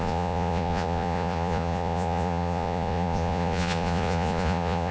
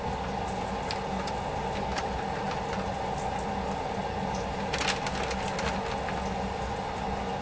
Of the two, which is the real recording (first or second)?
second